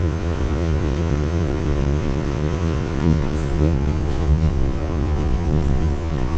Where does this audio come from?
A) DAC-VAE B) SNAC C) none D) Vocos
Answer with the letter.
D